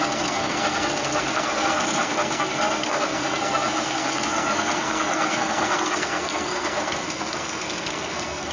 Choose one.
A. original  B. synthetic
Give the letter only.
B